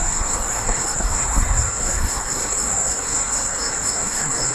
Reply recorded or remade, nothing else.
remade